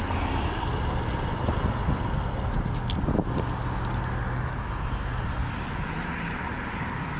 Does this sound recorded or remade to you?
recorded